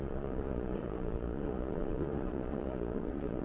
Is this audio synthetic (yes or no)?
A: yes